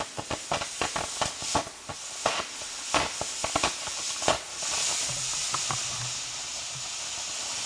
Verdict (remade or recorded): recorded